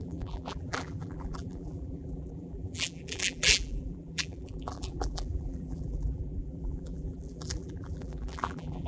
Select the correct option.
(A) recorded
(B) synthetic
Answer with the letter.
B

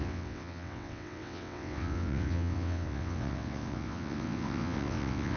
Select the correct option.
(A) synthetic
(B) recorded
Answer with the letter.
A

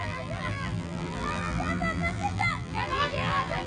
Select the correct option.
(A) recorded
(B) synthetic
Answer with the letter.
B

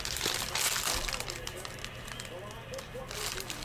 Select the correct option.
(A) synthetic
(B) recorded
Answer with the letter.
A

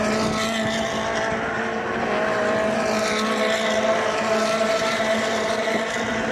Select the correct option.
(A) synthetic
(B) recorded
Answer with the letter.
B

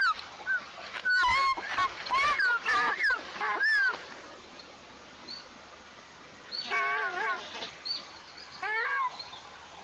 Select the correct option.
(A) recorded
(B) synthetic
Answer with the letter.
A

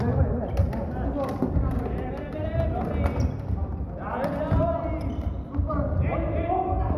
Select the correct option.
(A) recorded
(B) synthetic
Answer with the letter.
A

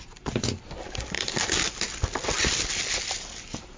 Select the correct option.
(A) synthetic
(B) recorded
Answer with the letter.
B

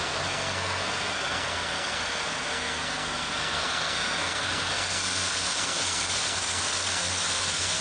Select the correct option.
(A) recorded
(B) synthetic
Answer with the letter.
B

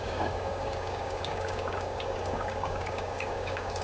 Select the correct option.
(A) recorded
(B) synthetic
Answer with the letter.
B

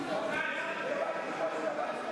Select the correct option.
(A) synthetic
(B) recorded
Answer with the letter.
A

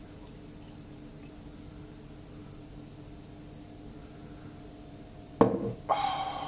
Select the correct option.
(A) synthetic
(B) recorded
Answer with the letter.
B